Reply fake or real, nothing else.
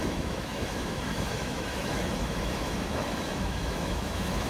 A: fake